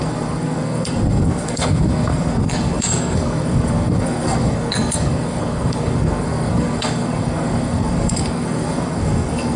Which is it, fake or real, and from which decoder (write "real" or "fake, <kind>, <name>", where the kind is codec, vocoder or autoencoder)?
fake, codec, SNAC